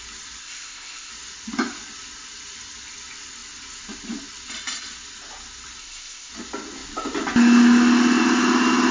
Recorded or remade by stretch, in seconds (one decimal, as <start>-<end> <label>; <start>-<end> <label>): 0.0-0.4 recorded; 0.4-1.1 remade; 1.1-5.8 recorded; 5.8-6.3 remade; 6.3-8.9 recorded